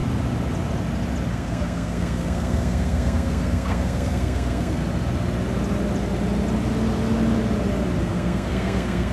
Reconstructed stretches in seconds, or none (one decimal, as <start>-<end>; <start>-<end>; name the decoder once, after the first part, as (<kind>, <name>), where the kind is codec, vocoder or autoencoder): 1.3-4.8 (codec, SNAC); 8.0-9.1